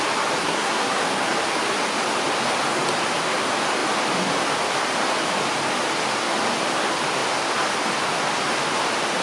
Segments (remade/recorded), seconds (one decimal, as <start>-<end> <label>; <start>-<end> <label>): 0.0-0.4 recorded; 0.4-1.0 remade; 1.0-9.2 recorded